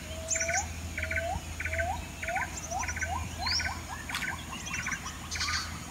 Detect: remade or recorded recorded